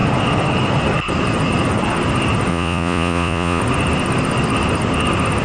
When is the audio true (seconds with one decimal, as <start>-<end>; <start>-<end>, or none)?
0.0-2.5; 3.6-5.4